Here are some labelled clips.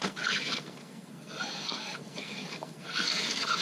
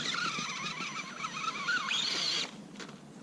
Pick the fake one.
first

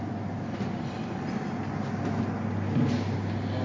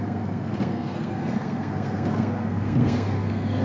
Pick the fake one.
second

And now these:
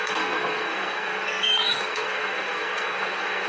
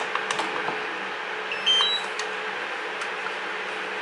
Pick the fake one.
first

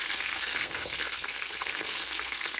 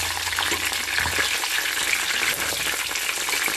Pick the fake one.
first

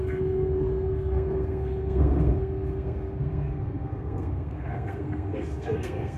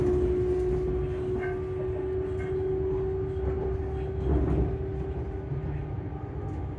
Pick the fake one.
first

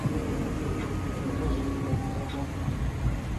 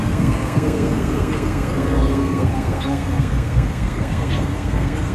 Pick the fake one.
second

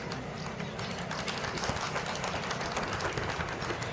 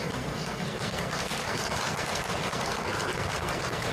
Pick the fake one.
second